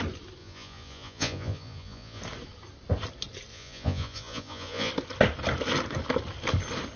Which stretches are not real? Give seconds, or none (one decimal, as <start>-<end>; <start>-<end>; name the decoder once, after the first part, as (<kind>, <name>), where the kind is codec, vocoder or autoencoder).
0.4-2.2 (vocoder, Vocos); 3.5-4.9